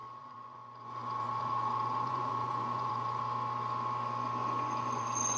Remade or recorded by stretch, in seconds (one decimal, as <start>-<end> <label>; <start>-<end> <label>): 0.0-3.2 remade; 3.2-4.4 recorded; 4.4-5.4 remade